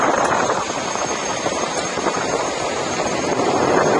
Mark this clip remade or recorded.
remade